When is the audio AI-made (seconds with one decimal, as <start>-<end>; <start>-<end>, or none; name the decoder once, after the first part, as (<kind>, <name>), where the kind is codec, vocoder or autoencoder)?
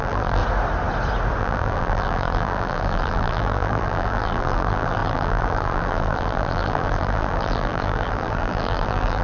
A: 0.0-0.4 (vocoder, BigVGAN v2); 1.4-9.2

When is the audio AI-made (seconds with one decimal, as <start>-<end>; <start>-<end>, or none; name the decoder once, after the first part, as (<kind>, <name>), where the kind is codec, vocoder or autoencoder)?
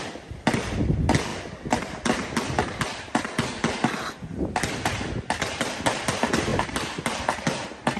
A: none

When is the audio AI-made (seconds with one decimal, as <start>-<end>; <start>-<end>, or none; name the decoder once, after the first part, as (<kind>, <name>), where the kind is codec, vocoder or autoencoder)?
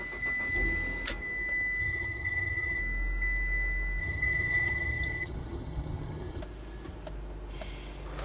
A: 1.8-2.8 (vocoder, HiFi-GAN); 4.0-6.4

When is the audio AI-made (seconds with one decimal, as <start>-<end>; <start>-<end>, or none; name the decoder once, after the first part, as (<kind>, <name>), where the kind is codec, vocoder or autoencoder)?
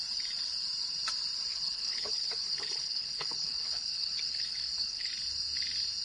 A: 1.5-5.1 (codec, HILCodec)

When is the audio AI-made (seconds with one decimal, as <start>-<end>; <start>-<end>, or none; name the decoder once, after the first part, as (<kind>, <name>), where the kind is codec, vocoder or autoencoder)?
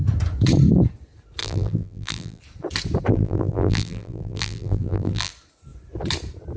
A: 1.4-2.4 (vocoder, BigVGAN v2); 3.1-5.3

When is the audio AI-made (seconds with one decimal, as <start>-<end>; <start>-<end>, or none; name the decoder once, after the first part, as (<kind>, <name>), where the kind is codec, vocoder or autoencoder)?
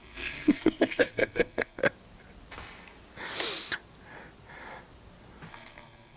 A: 0.0-1.8 (codec, SNAC); 5.5-6.2